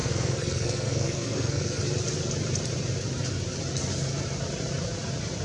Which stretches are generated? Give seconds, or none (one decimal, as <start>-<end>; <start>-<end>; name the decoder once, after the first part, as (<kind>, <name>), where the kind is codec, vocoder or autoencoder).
0.0-1.8 (codec, SNAC)